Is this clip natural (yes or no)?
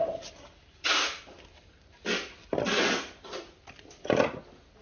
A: yes